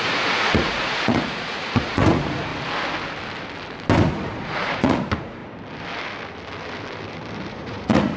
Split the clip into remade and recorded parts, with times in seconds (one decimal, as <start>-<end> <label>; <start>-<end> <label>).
0.0-2.5 remade; 2.5-4.1 recorded; 4.1-5.4 remade; 5.4-7.5 recorded; 7.5-8.2 remade